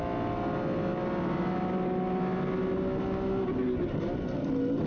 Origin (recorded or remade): recorded